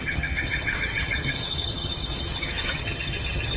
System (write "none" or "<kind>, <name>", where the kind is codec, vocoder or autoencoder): vocoder, HiFi-GAN